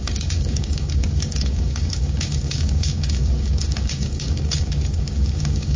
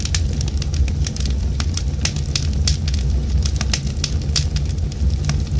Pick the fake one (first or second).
first